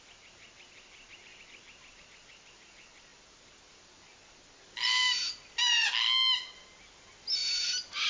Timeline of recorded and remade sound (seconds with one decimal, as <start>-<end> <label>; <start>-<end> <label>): 0.0-8.1 recorded